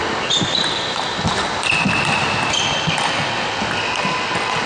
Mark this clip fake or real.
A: real